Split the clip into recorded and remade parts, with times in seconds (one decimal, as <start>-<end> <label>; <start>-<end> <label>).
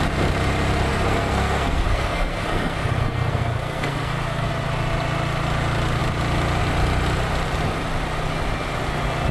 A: 0.0-0.9 recorded; 0.9-4.5 remade; 4.5-9.3 recorded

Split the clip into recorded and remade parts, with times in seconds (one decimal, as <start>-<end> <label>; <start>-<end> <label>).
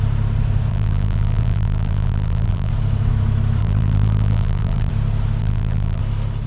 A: 0.0-0.7 recorded; 0.7-2.7 remade; 2.7-3.6 recorded; 3.6-4.9 remade; 4.9-5.4 recorded; 5.4-6.0 remade; 6.0-6.5 recorded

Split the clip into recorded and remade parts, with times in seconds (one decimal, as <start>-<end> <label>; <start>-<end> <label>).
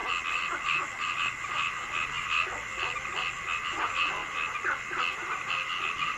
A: 0.0-6.2 recorded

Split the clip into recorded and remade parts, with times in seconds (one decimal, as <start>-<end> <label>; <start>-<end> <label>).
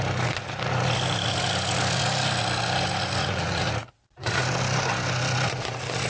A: 0.0-3.2 recorded; 3.2-4.4 remade; 4.4-6.1 recorded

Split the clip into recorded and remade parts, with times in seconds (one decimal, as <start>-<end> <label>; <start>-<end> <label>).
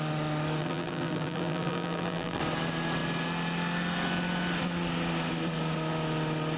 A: 0.0-0.6 recorded; 0.6-2.4 remade; 2.4-6.6 recorded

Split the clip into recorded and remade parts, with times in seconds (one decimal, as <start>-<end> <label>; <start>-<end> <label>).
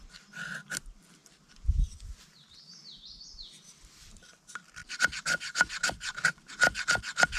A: 0.0-1.2 recorded; 1.2-1.7 remade; 1.7-4.8 recorded; 4.8-7.0 remade; 7.0-7.4 recorded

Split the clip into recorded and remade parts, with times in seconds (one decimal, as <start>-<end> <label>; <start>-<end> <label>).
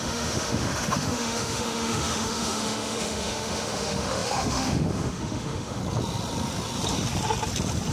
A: 0.0-5.8 remade; 5.8-7.9 recorded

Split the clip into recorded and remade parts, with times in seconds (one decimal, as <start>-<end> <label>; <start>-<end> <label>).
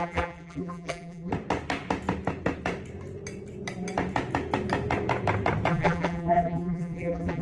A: 0.0-1.3 remade; 1.3-5.7 recorded; 5.7-7.4 remade